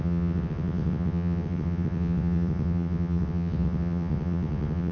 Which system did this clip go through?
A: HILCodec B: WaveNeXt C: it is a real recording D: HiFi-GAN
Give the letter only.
B